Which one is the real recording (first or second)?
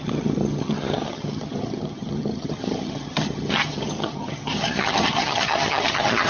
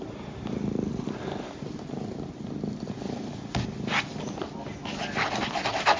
second